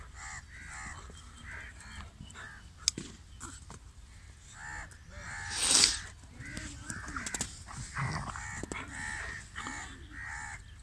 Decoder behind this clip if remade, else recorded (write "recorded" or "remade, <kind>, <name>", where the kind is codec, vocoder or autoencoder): recorded